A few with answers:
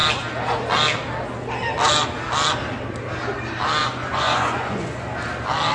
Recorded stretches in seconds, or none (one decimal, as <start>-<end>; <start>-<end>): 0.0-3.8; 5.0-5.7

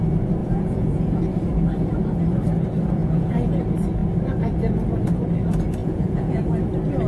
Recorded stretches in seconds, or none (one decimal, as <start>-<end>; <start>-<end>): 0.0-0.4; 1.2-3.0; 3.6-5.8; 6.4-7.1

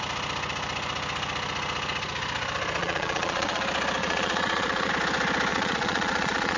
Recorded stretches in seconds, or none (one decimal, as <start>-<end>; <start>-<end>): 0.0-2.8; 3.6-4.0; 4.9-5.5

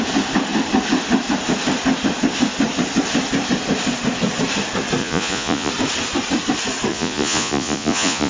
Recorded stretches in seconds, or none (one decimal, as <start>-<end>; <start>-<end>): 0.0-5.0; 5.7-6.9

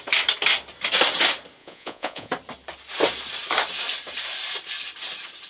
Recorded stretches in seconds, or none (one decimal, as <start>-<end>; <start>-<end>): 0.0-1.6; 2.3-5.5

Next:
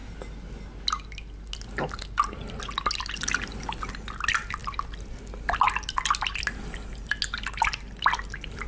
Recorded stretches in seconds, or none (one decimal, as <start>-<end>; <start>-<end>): 0.0-8.7